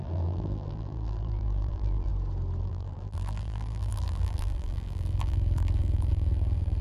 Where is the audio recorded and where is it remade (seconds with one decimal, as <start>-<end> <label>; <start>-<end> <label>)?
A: 0.0-2.1 remade; 2.1-2.6 recorded; 2.6-6.8 remade